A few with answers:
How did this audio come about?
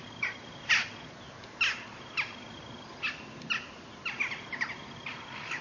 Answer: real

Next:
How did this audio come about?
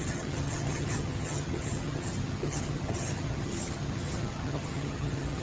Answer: fake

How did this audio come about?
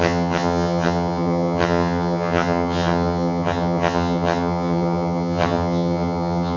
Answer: fake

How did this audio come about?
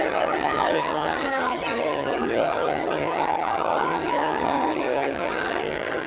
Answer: fake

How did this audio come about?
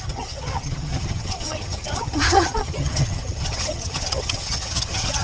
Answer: fake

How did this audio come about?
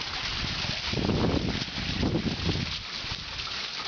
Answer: real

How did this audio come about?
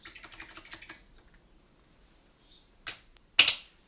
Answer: real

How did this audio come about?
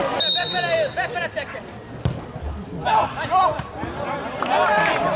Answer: real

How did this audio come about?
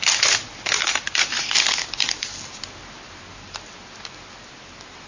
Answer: real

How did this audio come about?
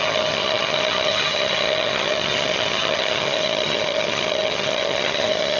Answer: fake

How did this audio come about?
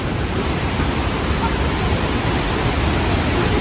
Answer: real